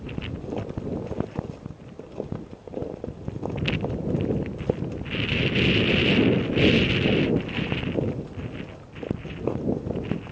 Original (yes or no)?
yes